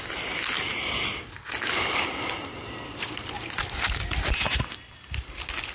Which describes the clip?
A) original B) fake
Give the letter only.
A